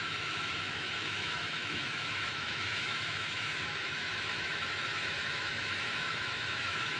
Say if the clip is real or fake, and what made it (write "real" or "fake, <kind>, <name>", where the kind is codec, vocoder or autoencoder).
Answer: fake, autoencoder, DAC-VAE